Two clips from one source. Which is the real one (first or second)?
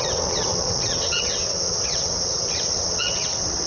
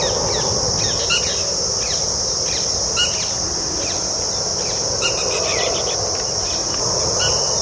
second